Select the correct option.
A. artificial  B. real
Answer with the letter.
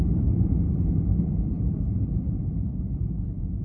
A